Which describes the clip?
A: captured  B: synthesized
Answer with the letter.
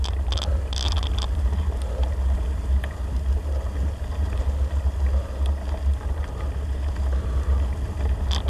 A